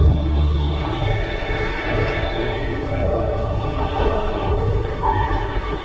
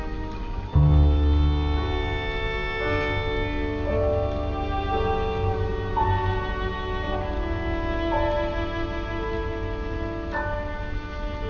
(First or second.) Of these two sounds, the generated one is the first